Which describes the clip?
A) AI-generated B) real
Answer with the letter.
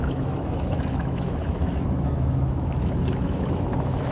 A